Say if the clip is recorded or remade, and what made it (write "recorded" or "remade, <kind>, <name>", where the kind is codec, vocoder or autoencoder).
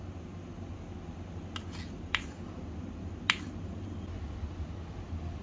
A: recorded